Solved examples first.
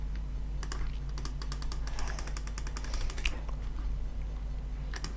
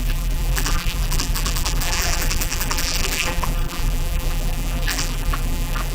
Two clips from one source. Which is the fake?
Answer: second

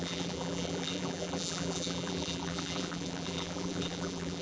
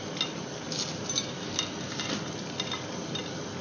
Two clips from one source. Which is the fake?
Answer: first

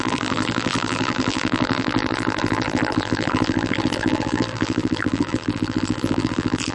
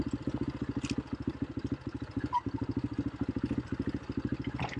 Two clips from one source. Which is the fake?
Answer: first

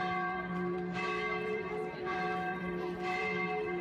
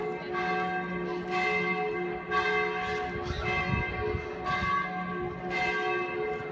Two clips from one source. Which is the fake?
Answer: first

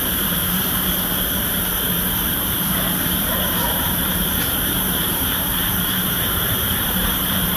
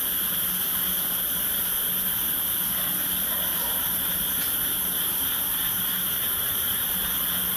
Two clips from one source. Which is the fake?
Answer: first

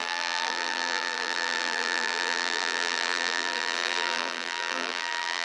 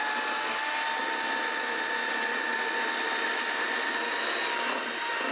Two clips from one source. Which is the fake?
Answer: first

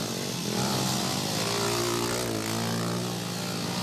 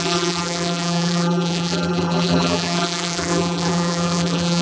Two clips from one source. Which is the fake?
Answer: second